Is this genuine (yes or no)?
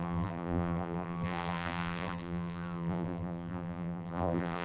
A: no